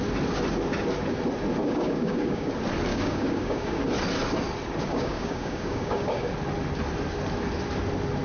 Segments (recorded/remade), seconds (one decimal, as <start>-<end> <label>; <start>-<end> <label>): 0.0-1.6 recorded; 1.6-2.5 remade; 2.5-2.9 recorded; 2.9-3.8 remade; 3.8-4.9 recorded; 4.9-6.3 remade; 6.3-8.2 recorded